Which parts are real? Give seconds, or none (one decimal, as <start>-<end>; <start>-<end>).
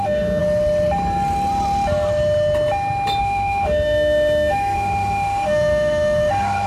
0.4-3.2